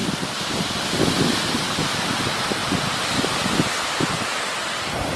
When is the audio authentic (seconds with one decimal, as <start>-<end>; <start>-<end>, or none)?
0.0-5.2